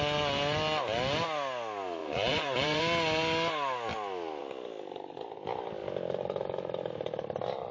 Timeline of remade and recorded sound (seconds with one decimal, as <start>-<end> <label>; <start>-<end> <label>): 0.0-2.0 recorded; 2.0-2.8 remade; 2.8-7.7 recorded